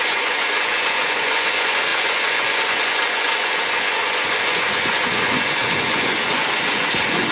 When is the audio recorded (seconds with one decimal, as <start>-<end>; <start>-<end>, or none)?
none